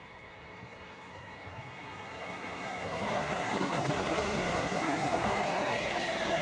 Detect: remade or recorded remade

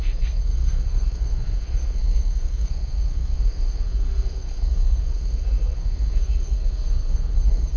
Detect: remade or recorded remade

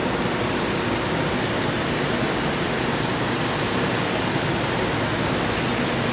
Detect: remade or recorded recorded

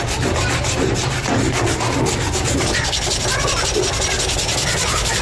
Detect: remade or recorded recorded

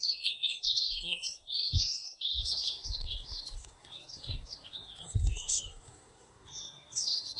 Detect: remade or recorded remade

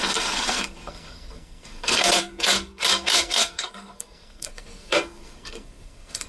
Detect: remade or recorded remade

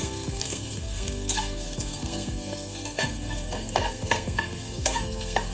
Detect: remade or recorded remade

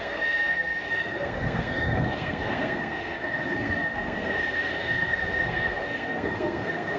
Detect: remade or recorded remade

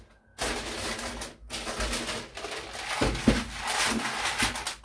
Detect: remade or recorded recorded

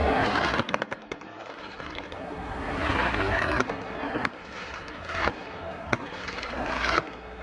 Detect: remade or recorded remade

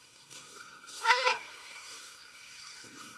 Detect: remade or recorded remade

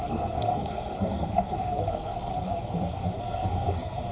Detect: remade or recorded remade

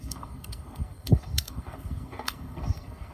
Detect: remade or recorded remade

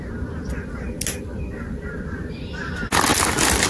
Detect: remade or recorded recorded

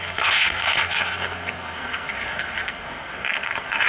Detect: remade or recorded remade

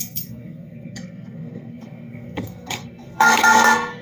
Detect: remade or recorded remade